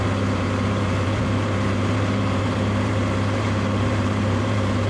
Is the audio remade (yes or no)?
yes